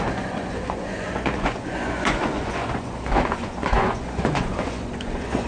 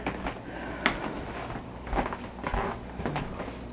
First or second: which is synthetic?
first